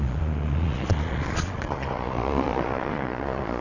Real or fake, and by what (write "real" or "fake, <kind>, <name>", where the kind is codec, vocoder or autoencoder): fake, vocoder, Vocos